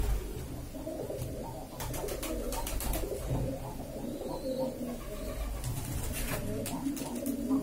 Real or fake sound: real